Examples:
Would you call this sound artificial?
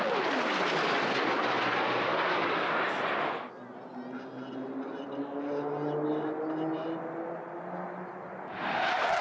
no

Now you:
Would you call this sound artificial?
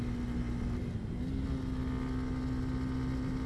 no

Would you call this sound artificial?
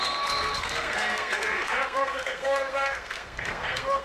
yes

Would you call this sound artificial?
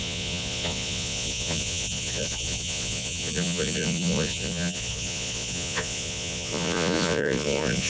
yes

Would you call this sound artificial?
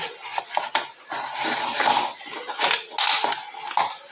no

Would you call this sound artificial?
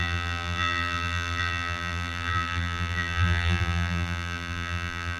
yes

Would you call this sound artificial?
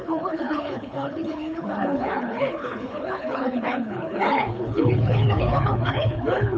yes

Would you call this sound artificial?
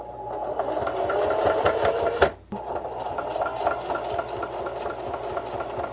no